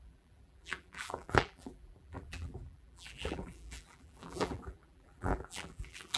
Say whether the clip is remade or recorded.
remade